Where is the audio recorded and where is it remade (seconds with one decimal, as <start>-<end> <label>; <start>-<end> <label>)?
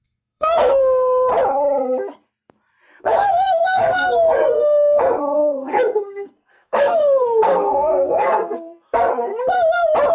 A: 0.0-1.3 remade; 1.3-3.0 recorded; 3.0-9.3 remade; 9.3-10.1 recorded